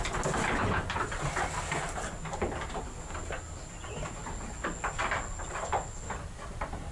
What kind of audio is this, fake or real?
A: real